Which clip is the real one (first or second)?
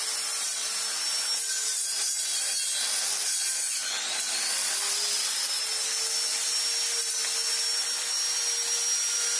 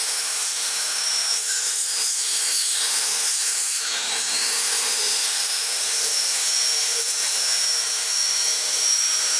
first